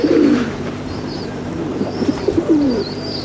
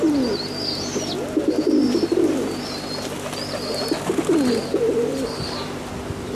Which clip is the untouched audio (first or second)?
second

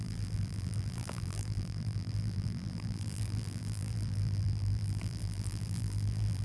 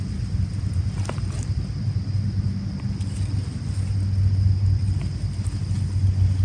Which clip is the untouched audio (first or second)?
second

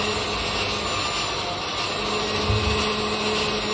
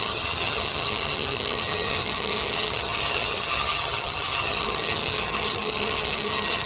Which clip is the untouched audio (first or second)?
first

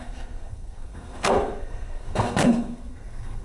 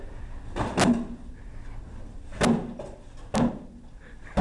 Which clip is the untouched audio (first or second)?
second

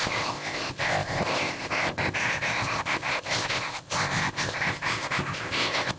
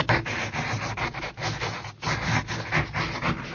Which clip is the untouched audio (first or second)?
second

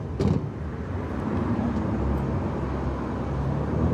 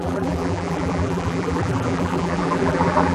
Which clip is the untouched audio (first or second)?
first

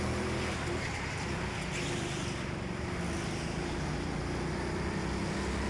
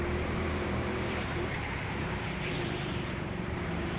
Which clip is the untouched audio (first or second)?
first